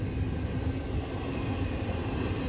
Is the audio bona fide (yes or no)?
yes